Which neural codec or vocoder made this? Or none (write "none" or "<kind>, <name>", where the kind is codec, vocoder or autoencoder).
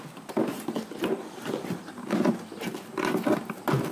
none